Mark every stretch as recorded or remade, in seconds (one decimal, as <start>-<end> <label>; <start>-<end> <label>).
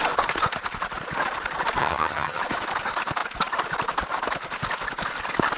0.0-1.8 recorded; 1.8-2.4 remade; 2.4-5.6 recorded